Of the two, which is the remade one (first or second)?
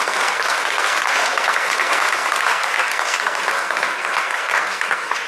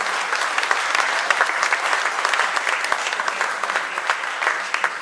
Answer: first